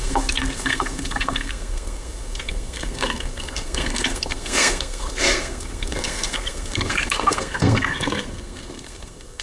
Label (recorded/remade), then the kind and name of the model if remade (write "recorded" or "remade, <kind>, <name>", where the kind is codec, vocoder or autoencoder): remade, codec, SNAC